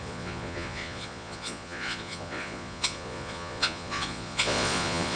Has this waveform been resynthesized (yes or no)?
yes